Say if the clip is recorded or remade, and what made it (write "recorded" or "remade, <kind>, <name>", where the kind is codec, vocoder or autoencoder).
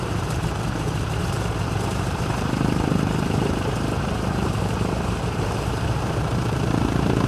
remade, vocoder, BigVGAN v2